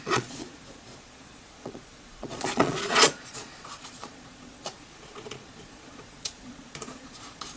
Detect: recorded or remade remade